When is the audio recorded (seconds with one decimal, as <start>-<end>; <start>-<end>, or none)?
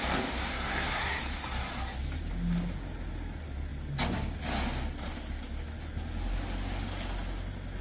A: 0.0-0.5; 1.2-7.8